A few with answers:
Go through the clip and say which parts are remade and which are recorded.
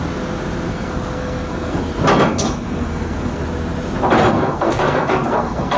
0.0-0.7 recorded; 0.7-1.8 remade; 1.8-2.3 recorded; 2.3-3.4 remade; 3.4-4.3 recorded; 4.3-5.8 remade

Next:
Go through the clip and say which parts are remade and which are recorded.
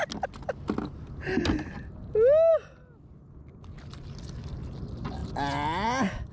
0.0-6.3 recorded